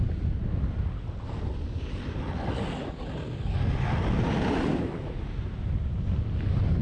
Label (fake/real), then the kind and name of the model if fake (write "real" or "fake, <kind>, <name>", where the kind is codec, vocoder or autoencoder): real